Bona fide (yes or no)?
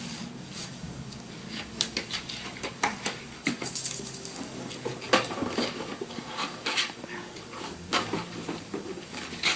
no